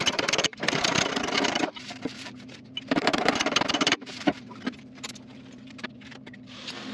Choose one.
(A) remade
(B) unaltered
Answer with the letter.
A